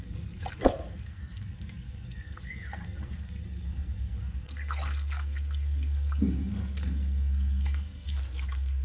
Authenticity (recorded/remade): remade